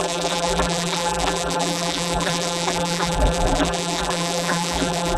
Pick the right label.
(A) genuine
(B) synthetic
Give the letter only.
B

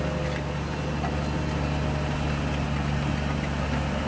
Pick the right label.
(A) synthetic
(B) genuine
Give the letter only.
B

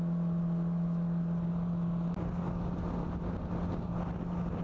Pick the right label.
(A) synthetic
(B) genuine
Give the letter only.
B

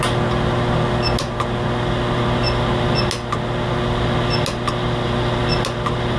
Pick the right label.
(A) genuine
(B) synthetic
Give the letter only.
A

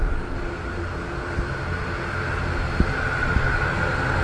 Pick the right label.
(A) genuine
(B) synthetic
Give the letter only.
A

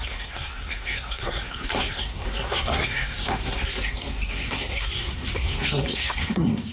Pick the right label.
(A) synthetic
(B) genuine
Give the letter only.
A